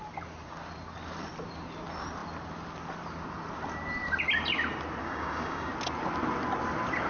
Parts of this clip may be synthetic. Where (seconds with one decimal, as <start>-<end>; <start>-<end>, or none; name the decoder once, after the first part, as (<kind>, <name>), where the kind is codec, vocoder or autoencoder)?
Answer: 5.0-5.7 (codec, DAC)